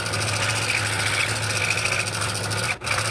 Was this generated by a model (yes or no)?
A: no